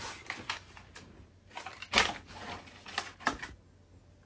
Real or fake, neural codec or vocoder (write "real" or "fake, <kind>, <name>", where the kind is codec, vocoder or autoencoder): real